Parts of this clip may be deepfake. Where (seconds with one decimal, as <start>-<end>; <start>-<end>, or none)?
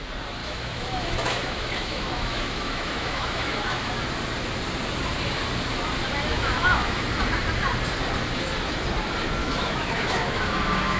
0.4-3.9; 6.3-7.0; 9.4-11.0